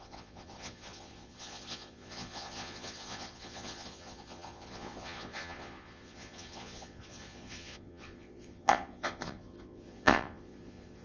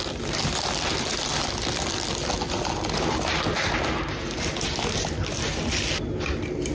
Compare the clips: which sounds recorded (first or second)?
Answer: second